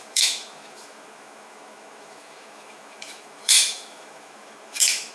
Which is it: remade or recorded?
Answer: remade